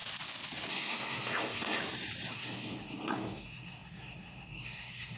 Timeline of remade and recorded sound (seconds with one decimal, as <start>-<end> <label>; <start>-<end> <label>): 0.0-0.7 recorded; 0.7-1.8 remade; 1.8-2.3 recorded; 2.3-5.2 remade